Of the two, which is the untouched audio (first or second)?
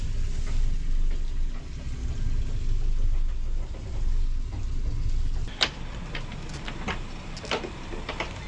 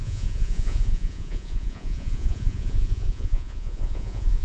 first